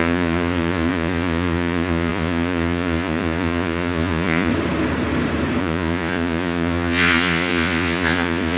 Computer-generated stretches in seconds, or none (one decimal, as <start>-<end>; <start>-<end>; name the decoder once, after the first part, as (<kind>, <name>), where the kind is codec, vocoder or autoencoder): 0.0-4.5 (vocoder, Vocos); 5.6-8.6